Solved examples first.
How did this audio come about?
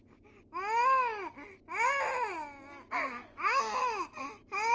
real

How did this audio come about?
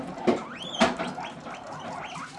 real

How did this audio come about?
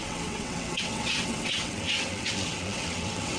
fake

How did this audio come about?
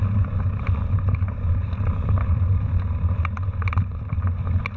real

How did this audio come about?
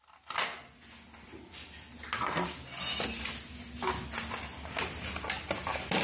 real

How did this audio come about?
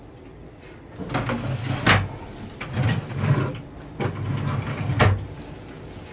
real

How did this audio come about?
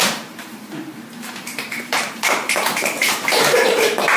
fake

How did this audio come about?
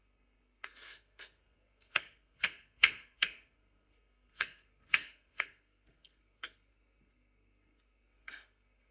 fake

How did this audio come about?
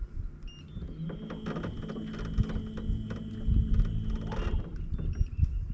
real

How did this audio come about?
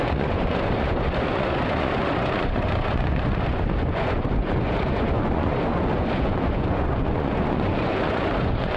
fake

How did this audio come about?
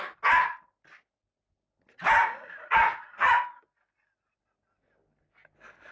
real